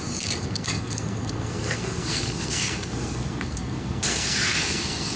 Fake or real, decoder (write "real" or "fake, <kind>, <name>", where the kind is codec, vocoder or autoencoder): fake, codec, SNAC